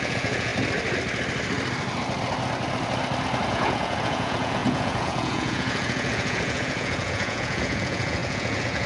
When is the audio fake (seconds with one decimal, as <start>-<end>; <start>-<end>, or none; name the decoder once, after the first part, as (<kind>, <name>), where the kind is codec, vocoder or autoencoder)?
0.0-0.5 (vocoder, Vocos); 3.5-8.9